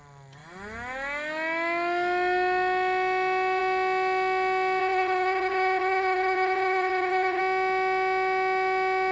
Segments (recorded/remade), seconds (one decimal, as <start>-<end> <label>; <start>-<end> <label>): 0.0-4.8 recorded; 4.8-7.4 remade; 7.4-9.1 recorded